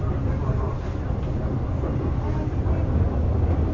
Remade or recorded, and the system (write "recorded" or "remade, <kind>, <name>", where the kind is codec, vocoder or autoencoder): recorded